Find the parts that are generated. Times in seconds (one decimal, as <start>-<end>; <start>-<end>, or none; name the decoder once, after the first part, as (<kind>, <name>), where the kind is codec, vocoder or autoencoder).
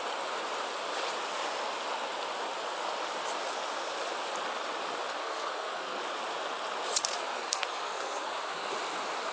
5.2-6.0 (codec, SNAC); 7.0-8.7